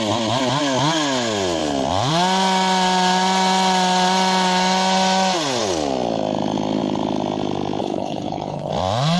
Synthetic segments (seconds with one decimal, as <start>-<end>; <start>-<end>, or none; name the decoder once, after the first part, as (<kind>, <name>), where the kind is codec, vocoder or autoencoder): 7.8-8.7 (codec, HILCodec)